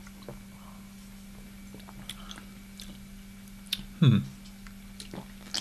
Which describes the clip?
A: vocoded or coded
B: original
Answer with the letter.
B